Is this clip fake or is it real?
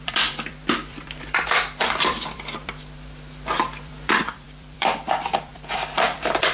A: fake